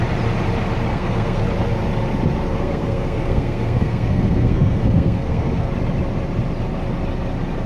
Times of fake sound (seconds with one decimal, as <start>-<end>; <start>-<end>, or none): 0.9-1.4; 2.5-5.7